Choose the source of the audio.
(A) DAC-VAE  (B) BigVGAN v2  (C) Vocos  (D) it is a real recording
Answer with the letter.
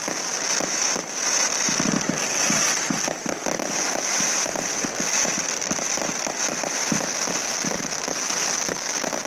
D